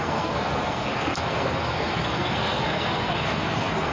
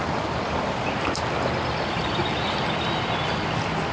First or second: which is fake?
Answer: first